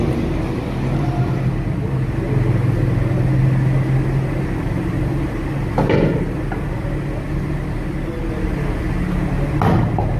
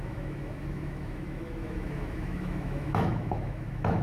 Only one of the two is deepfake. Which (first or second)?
second